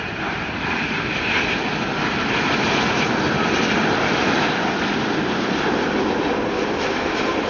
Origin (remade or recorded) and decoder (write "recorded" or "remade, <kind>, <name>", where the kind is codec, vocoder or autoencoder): recorded